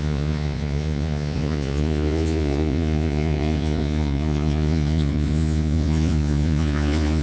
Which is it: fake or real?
fake